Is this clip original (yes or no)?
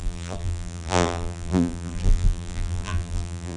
no